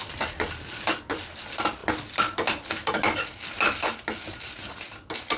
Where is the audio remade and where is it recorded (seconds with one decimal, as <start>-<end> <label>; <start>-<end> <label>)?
0.0-5.4 recorded